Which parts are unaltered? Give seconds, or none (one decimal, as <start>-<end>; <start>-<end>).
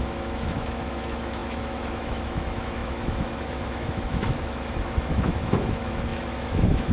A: none